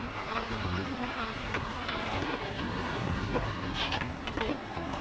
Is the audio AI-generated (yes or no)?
yes